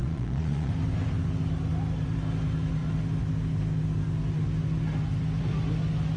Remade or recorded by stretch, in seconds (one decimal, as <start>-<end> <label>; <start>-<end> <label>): 0.0-0.7 remade; 0.7-6.2 recorded